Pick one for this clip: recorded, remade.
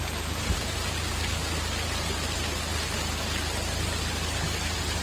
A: recorded